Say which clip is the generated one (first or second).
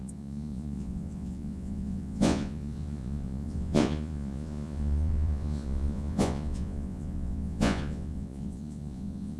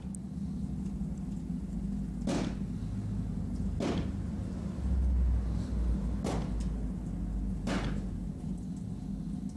first